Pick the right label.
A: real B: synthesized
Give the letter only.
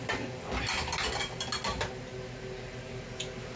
A